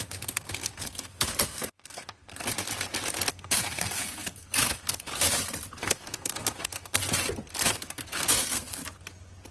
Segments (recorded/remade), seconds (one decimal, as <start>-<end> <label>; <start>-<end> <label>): 0.0-2.5 remade; 2.5-3.3 recorded; 3.3-5.1 remade; 5.1-5.8 recorded; 5.8-7.0 remade; 7.0-7.7 recorded; 7.7-8.8 remade; 8.8-9.5 recorded